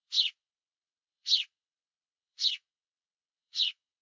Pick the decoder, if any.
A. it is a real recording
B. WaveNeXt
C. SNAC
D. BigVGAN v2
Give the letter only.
B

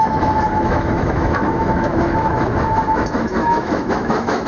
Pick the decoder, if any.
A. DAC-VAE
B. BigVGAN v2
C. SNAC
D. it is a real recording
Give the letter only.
A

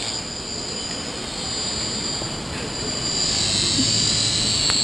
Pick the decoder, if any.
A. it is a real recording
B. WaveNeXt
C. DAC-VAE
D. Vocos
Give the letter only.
A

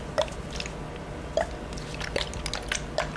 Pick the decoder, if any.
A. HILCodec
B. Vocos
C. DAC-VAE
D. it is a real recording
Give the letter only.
D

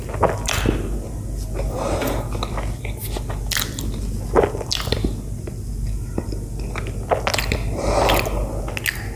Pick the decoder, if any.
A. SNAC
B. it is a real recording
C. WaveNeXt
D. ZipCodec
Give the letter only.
B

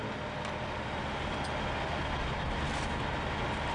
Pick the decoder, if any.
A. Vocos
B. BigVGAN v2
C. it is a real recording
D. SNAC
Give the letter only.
C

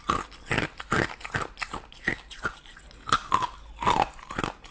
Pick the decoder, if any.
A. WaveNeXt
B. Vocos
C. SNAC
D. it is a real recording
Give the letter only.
D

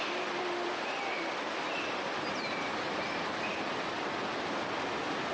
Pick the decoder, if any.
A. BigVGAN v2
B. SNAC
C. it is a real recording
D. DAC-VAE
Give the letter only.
C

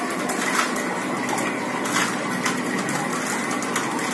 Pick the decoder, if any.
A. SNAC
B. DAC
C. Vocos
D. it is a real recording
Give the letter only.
D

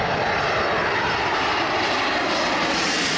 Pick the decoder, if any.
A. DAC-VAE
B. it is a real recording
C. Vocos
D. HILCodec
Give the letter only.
B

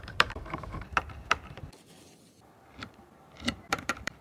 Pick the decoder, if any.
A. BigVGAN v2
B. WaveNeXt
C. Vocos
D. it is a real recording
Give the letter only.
A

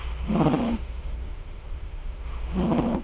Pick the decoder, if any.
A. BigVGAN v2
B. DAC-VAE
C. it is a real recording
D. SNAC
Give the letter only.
B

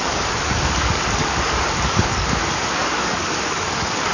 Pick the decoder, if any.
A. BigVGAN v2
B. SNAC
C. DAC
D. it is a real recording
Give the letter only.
C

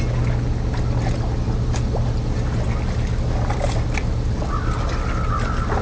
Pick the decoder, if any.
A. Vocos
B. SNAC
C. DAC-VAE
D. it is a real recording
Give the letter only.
D